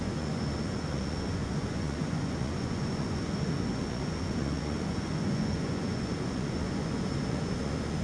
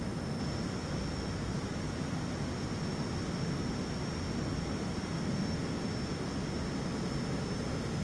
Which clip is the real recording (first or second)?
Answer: second